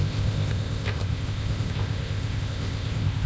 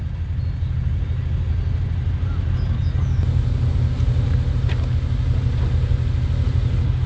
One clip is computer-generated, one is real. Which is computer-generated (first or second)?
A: first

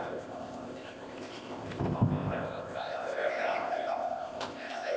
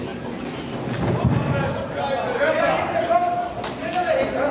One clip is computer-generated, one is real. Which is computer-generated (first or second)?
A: first